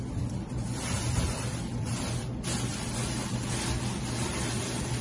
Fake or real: fake